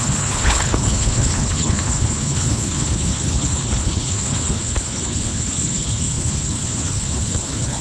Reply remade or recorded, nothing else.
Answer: remade